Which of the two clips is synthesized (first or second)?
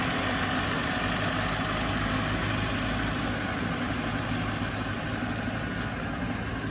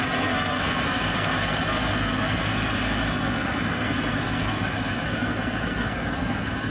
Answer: second